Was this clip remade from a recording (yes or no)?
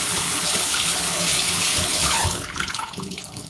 yes